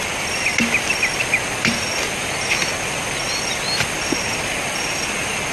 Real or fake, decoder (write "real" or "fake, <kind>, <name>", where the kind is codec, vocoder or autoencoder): real